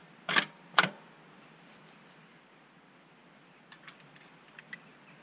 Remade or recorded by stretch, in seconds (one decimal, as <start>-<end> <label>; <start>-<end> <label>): 0.0-1.2 remade; 1.2-1.7 recorded; 1.7-2.3 remade; 2.3-5.2 recorded